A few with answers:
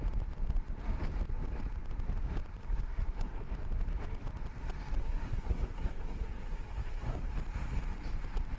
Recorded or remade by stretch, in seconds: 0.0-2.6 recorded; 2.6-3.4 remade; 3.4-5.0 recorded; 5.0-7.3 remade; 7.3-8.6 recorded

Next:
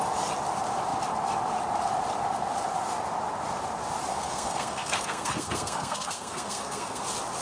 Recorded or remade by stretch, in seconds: 0.0-4.1 recorded; 4.1-7.0 remade; 7.0-7.4 recorded